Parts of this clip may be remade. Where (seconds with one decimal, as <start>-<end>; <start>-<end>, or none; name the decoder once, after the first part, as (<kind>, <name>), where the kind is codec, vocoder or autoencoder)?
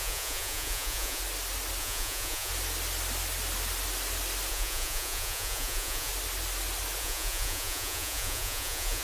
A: 0.0-1.2 (vocoder, Vocos); 1.8-2.5; 4.5-6.1; 7.0-9.0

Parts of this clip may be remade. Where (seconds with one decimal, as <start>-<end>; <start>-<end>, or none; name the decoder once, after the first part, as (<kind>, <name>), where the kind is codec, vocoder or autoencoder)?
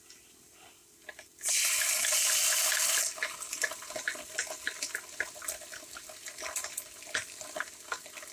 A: 0.0-0.8 (vocoder, BigVGAN v2); 3.4-5.7; 6.3-8.3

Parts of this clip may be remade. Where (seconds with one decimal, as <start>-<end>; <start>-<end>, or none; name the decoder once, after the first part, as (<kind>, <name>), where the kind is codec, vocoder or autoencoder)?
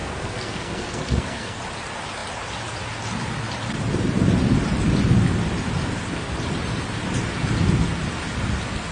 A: 0.0-1.6 (codec, SNAC)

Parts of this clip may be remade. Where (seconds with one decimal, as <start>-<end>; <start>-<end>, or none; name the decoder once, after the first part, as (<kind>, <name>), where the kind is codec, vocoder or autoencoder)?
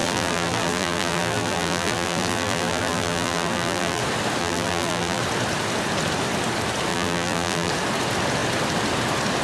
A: 0.0-4.0 (vocoder, BigVGAN v2); 4.4-5.2; 6.9-7.7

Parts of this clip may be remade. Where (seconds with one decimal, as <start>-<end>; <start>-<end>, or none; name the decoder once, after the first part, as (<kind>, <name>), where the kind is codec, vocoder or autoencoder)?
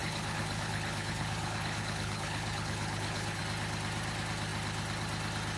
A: 0.0-3.4 (codec, HILCodec)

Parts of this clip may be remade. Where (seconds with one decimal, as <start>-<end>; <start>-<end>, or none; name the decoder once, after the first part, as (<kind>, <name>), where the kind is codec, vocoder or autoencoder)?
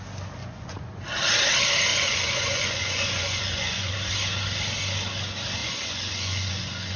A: 0.4-1.0 (vocoder, Vocos); 1.9-3.9; 5.6-7.0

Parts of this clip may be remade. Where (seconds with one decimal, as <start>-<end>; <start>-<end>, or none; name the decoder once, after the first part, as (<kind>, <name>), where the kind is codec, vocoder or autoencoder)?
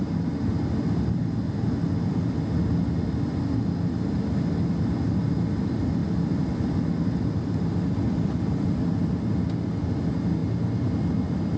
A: 0.5-1.2 (vocoder, BigVGAN v2); 6.0-9.1